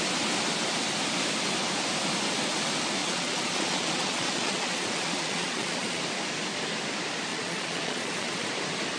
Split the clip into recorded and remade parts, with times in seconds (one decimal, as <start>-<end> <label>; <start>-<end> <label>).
0.0-3.0 recorded; 3.0-6.0 remade; 6.0-7.3 recorded; 7.3-8.5 remade; 8.5-9.0 recorded